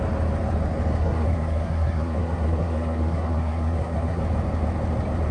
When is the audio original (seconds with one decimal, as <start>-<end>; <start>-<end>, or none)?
0.0-1.0; 4.2-5.3